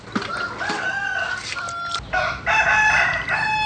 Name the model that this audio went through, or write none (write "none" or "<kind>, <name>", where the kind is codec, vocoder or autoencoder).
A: none